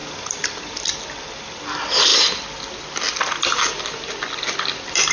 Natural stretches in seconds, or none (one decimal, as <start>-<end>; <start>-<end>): 0.0-5.1